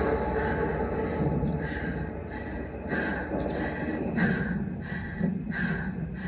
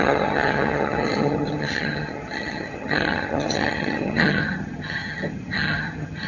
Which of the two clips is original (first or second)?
first